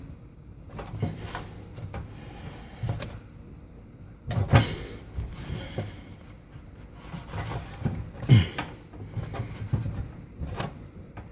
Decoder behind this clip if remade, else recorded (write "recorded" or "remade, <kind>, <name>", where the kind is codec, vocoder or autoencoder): recorded